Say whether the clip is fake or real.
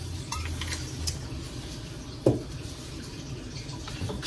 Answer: fake